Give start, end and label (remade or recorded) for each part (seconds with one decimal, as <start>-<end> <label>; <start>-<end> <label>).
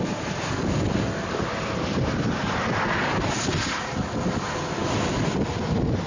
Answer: 0.0-6.1 recorded